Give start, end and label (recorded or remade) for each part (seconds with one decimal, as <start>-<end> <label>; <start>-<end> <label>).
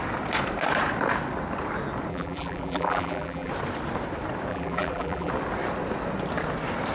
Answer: 0.0-2.1 recorded; 2.1-3.5 remade; 3.5-4.5 recorded; 4.5-5.3 remade; 5.3-6.9 recorded